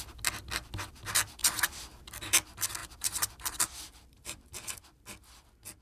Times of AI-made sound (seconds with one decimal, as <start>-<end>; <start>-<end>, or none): 1.4-2.0; 2.8-5.0